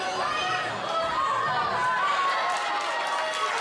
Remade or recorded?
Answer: recorded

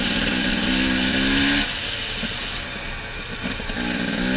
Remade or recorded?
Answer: recorded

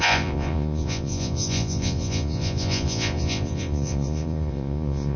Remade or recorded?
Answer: remade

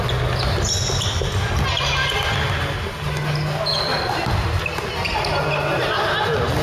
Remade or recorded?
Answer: recorded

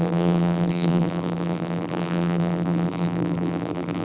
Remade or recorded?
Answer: remade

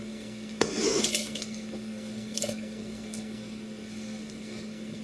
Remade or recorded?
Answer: remade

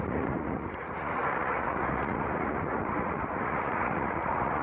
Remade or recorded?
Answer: remade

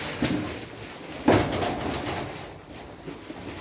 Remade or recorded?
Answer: recorded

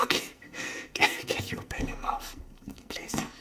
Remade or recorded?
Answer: remade